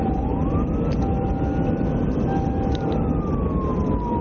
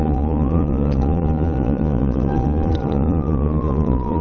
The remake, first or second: second